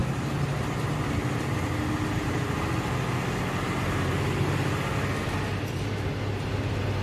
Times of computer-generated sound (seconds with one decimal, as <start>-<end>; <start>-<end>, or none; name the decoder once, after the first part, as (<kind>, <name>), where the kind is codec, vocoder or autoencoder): none